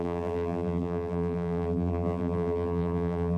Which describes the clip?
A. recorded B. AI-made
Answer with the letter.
B